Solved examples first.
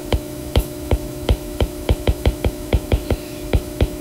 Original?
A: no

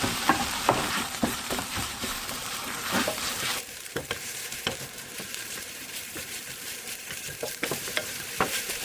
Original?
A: no